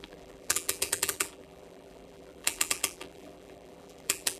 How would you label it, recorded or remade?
remade